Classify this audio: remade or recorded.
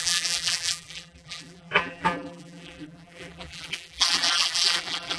remade